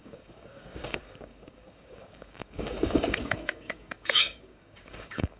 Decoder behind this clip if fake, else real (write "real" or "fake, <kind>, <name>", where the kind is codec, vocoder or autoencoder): fake, codec, DAC